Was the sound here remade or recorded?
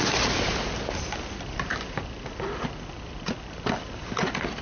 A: recorded